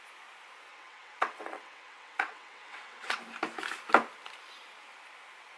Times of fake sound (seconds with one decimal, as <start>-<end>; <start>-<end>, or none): 0.7-3.2